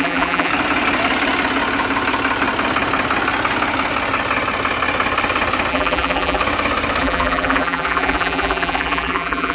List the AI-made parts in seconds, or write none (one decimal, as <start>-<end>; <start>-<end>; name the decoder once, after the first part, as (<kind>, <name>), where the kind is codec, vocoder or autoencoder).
0.0-0.5 (vocoder, BigVGAN v2); 5.7-6.4; 7.0-9.5